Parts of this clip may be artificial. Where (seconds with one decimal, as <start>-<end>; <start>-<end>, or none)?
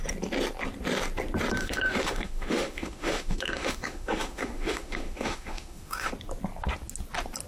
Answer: 1.6-6.1